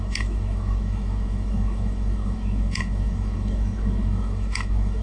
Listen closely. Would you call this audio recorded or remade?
remade